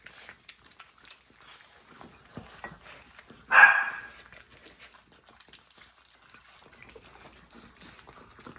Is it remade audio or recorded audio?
recorded